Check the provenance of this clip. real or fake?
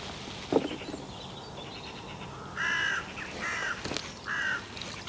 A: real